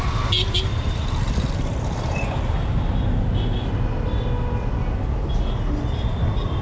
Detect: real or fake real